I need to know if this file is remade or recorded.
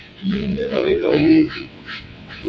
remade